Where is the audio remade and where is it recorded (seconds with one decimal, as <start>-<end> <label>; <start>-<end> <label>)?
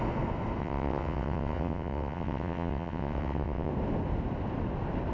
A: 0.0-0.6 recorded; 0.6-3.7 remade; 3.7-5.1 recorded